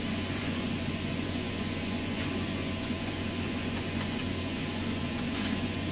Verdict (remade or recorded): remade